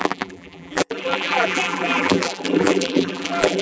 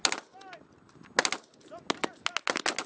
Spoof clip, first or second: first